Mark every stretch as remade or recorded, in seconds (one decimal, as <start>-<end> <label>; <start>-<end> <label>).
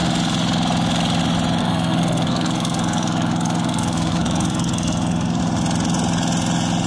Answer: 0.0-1.6 recorded; 1.6-5.4 remade; 5.4-6.9 recorded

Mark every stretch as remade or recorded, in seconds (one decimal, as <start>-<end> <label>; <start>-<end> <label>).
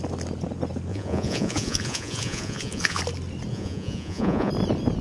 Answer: 0.0-0.9 recorded; 0.9-3.0 remade; 3.0-3.5 recorded; 3.5-4.5 remade; 4.5-5.0 recorded